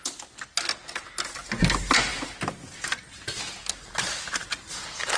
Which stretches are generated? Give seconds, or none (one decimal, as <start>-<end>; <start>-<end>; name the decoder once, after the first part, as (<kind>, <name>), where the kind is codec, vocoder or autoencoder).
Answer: none